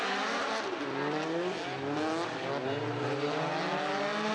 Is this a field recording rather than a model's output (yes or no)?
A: yes